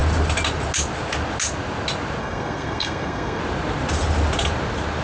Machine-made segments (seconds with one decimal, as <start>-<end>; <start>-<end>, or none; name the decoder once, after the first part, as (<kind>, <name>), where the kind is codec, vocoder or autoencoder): 2.2-3.4 (codec, SNAC)